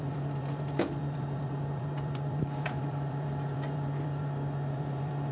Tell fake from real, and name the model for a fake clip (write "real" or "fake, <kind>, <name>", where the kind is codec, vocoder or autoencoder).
fake, vocoder, BigVGAN v2